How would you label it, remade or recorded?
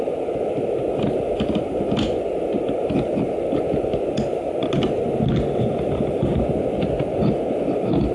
recorded